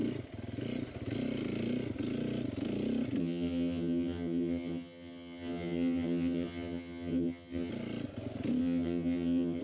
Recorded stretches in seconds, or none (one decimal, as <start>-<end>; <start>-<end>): 0.0-3.2; 7.7-8.6